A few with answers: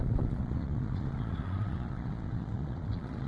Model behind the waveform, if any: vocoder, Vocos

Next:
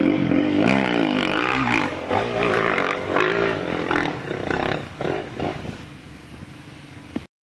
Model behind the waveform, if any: codec, DAC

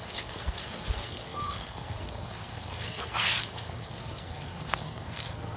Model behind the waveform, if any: codec, SNAC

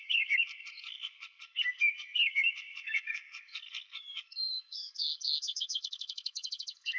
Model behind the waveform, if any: codec, SNAC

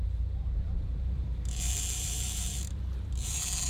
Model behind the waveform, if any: vocoder, BigVGAN v2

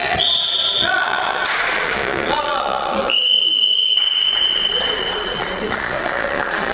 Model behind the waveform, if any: vocoder, Vocos